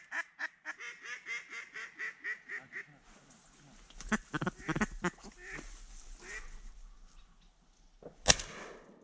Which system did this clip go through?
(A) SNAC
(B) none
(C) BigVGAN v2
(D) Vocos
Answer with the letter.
B